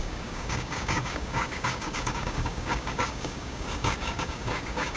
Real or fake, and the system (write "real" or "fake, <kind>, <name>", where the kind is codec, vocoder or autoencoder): fake, codec, DAC